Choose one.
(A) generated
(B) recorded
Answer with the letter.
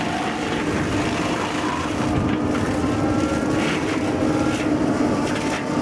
B